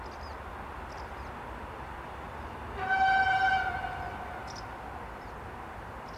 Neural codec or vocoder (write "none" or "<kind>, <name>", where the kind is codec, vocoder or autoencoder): none